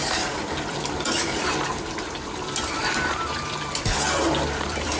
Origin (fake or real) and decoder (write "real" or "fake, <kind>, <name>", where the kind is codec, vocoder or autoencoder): fake, vocoder, BigVGAN v2